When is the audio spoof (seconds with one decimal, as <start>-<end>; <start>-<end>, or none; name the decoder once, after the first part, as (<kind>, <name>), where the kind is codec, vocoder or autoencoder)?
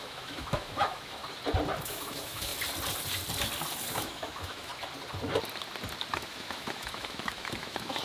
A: 0.0-1.2 (autoencoder, DAC-VAE); 1.8-2.5; 3.9-4.7; 6.1-8.0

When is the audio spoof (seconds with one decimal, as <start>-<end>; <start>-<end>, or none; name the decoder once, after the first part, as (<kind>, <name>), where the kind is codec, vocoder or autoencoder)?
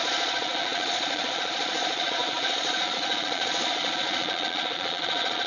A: 0.0-5.5 (vocoder, Vocos)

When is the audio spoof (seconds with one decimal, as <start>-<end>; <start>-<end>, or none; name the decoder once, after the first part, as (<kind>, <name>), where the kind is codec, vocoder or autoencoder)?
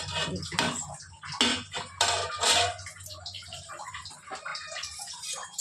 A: 1.5-3.7 (vocoder, BigVGAN v2); 4.5-5.6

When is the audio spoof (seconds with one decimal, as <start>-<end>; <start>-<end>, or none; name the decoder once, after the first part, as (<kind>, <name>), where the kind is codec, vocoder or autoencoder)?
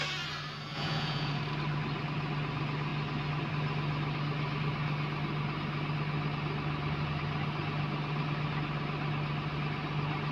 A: 0.7-1.4 (vocoder, Vocos)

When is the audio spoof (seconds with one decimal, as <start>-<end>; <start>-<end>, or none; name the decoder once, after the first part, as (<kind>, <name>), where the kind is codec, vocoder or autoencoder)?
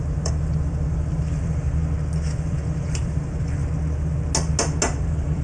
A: 0.0-1.8 (vocoder, BigVGAN v2); 2.3-3.6; 5.0-5.4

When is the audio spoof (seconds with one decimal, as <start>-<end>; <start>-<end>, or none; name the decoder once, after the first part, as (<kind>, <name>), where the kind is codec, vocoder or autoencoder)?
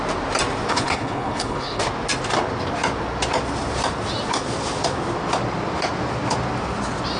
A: 0.7-1.8 (codec, HILCodec)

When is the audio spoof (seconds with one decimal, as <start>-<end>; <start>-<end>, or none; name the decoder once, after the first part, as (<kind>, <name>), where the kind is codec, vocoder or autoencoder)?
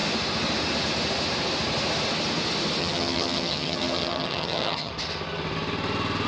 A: 2.8-4.9 (vocoder, HiFi-GAN)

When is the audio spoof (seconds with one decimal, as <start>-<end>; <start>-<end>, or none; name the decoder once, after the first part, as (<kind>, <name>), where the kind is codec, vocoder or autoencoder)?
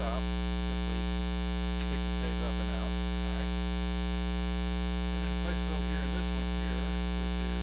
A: none